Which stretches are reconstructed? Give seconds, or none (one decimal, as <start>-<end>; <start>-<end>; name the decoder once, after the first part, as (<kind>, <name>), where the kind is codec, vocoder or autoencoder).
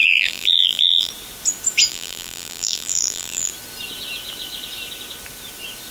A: 0.0-1.1 (vocoder, BigVGAN v2); 1.9-3.5